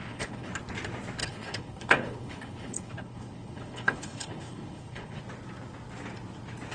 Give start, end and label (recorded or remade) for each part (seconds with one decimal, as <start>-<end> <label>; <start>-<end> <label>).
0.0-0.5 remade; 0.5-1.2 recorded; 1.2-5.2 remade; 5.2-6.7 recorded